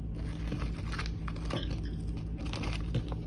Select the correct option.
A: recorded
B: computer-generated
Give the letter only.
A